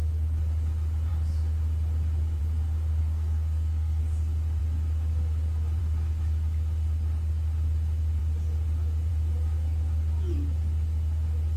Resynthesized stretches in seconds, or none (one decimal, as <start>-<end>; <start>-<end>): 3.0-4.0